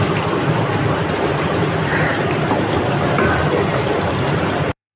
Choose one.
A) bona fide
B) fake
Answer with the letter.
B